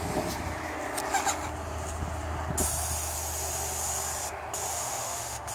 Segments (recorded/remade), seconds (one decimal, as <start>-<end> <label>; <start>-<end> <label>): 0.0-4.7 recorded; 4.7-5.5 remade